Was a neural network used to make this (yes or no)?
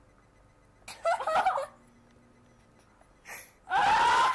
no